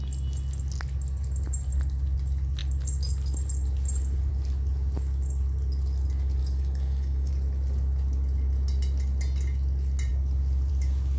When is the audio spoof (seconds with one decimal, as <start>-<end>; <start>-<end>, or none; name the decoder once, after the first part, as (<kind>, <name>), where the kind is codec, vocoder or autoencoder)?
6.4-7.3 (codec, DAC)